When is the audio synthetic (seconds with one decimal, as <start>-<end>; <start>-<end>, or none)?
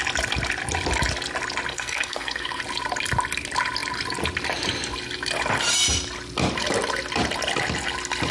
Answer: 1.7-2.6